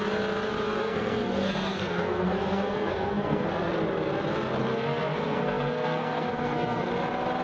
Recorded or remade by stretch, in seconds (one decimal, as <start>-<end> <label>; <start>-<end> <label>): 0.0-0.8 recorded; 0.8-3.5 remade; 3.5-4.7 recorded; 4.7-6.9 remade; 6.9-7.4 recorded